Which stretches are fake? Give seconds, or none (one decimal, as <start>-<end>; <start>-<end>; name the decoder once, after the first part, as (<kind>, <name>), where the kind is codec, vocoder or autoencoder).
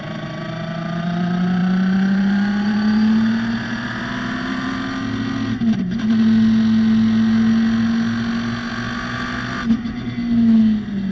none